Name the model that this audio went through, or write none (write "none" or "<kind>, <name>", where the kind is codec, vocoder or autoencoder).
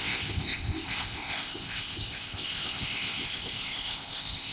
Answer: codec, ZipCodec